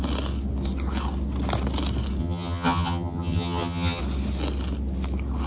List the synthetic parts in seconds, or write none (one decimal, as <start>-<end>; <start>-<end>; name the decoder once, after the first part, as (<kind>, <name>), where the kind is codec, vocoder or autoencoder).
2.2-4.0 (vocoder, HiFi-GAN)